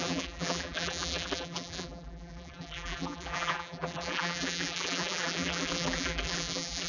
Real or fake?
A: fake